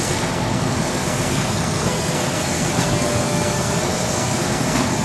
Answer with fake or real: fake